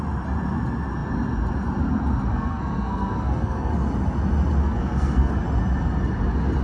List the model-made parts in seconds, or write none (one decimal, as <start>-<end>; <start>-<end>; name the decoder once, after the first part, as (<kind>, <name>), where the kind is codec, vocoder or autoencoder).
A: 2.3-3.7 (codec, SNAC); 4.6-5.3